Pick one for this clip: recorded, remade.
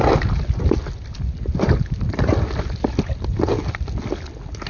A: recorded